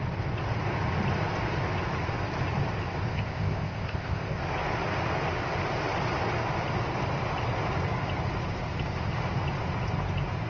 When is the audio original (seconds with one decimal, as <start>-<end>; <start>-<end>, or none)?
0.0-3.1; 4.4-10.5